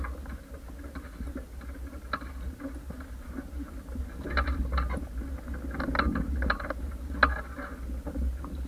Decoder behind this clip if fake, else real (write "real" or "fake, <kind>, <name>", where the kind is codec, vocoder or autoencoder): real